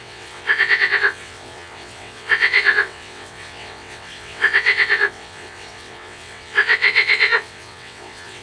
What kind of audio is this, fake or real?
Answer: fake